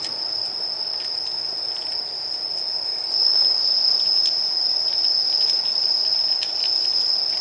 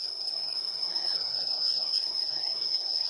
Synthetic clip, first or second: second